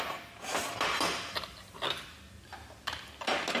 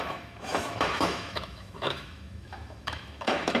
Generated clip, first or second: second